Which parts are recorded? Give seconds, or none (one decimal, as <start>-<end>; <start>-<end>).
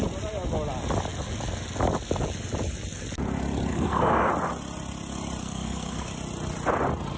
0.0-3.7; 4.3-5.4; 6.1-7.2